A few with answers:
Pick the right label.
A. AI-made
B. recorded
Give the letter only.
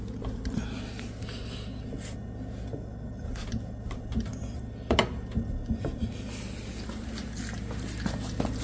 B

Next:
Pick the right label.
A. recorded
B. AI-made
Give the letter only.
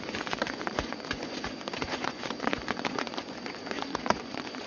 B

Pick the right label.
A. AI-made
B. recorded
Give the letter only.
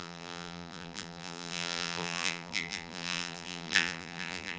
A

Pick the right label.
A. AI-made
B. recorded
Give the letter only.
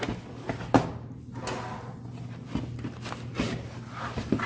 B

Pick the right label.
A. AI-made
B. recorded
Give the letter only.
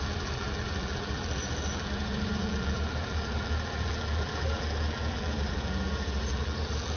A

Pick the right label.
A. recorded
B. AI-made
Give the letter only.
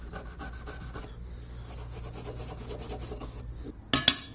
A